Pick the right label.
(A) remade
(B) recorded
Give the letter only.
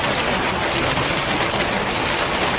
B